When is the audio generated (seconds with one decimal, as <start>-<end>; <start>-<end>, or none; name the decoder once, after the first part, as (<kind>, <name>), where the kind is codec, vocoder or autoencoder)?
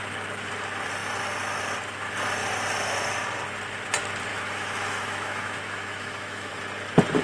4.3-6.5 (autoencoder, DAC-VAE)